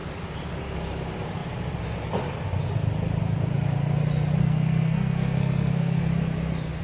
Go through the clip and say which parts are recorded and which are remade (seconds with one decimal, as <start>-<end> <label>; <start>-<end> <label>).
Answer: 0.0-4.4 recorded; 4.4-6.0 remade; 6.0-6.8 recorded